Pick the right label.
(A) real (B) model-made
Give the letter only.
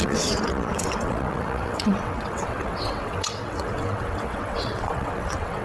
B